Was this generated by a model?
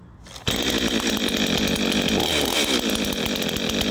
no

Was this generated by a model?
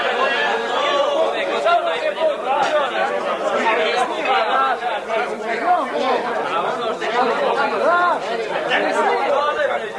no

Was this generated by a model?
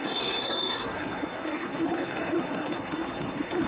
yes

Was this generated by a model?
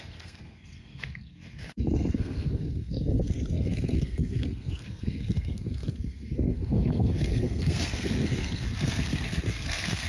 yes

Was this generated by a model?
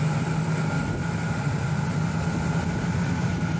no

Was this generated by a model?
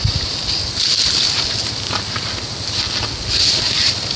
no